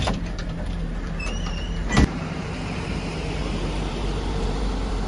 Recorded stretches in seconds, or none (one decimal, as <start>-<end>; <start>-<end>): none